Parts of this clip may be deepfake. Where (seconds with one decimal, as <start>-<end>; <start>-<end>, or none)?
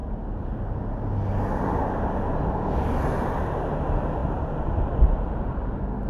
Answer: 4.2-5.1